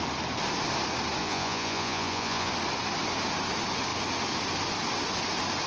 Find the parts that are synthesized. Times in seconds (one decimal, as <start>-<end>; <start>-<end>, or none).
1.2-2.5